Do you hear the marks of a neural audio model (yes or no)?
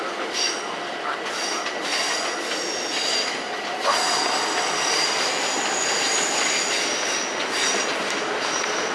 no